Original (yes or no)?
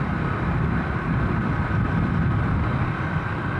yes